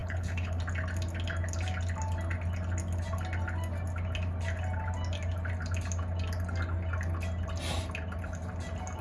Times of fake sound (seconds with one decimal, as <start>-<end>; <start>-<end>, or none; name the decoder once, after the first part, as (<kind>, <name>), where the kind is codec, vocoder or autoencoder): 0.0-0.6 (codec, HILCodec)